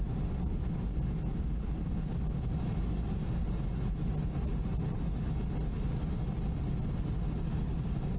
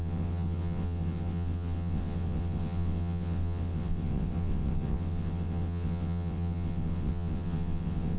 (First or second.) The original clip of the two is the first